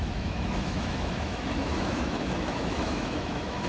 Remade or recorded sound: remade